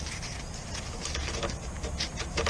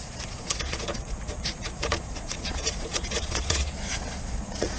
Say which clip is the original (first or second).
first